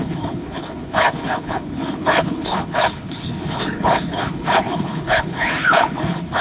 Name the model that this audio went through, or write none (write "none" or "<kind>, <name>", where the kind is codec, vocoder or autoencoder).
codec, HILCodec